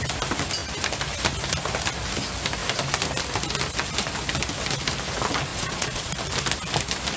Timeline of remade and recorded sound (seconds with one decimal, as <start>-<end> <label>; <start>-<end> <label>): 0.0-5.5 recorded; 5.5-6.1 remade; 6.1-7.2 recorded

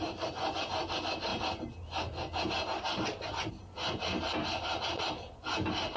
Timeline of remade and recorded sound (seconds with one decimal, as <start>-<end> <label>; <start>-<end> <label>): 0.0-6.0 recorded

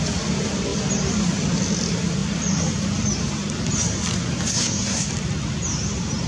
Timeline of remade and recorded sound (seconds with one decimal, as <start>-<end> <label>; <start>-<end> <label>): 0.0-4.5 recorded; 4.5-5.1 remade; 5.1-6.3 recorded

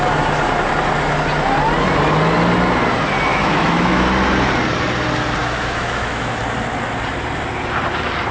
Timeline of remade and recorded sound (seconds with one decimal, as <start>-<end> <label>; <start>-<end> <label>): 0.0-3.3 recorded; 3.3-4.0 remade; 4.0-5.4 recorded; 5.4-6.4 remade; 6.4-8.3 recorded

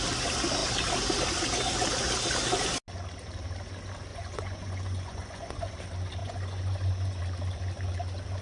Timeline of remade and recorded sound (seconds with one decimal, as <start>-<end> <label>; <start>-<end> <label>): 0.0-4.1 recorded; 4.1-5.7 remade; 5.7-6.2 recorded; 6.2-7.2 remade; 7.2-8.4 recorded

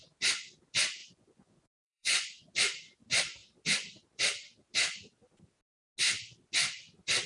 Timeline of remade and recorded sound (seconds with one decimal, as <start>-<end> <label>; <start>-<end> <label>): 0.0-1.0 recorded; 1.0-2.5 remade; 2.5-7.3 recorded